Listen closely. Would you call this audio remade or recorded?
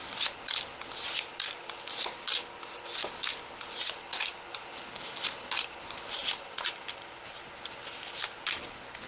recorded